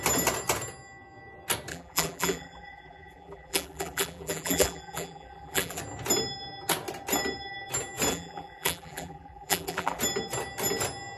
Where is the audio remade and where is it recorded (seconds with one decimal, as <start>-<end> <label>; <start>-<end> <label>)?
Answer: 0.0-1.7 recorded; 1.7-5.8 remade; 5.8-8.1 recorded; 8.1-10.0 remade; 10.0-11.2 recorded